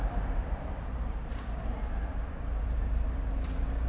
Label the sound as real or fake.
fake